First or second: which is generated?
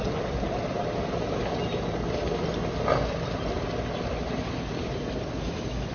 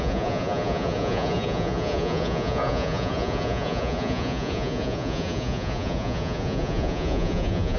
second